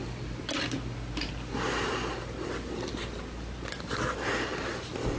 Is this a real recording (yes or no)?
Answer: yes